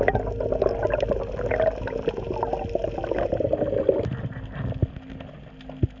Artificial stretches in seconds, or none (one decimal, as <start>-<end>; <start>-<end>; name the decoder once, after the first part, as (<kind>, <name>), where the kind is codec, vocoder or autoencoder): none